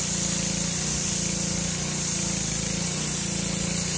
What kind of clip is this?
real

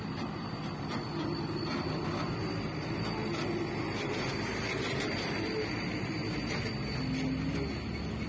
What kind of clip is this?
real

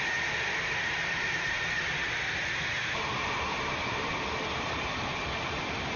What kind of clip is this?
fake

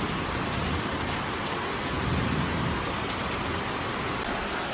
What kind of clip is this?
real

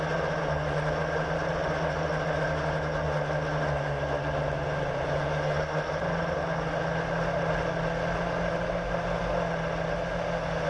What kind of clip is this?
real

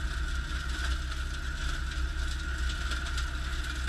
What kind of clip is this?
real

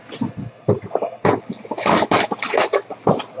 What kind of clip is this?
real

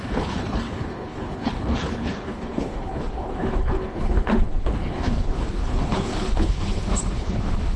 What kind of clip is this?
fake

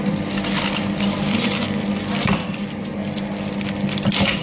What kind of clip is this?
real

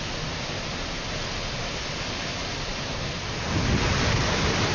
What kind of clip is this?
real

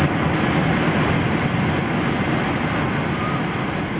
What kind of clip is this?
real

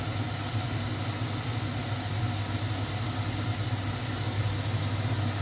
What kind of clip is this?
real